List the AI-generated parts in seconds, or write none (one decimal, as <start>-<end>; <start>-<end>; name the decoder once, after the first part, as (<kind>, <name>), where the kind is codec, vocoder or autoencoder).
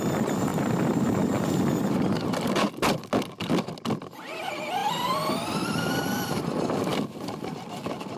4.8-6.4 (vocoder, BigVGAN v2); 6.9-8.2